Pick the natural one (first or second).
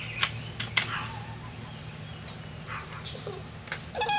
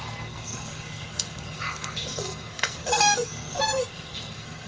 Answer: first